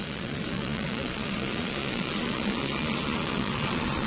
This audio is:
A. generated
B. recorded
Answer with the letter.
A